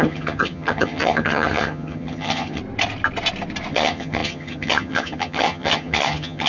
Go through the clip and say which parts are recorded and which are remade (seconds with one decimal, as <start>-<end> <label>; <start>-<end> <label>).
0.0-2.6 remade; 2.6-3.7 recorded; 3.7-6.5 remade